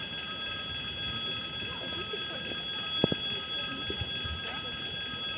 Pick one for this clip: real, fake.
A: real